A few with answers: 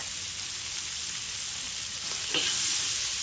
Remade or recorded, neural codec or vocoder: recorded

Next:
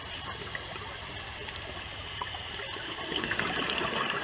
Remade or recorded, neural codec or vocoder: remade, vocoder, BigVGAN v2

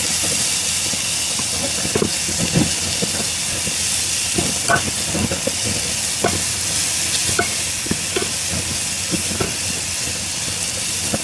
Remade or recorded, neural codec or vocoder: recorded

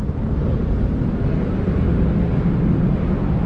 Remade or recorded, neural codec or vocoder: recorded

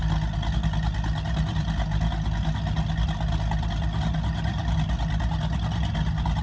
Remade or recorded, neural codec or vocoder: recorded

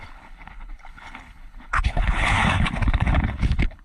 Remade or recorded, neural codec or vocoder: remade, codec, HILCodec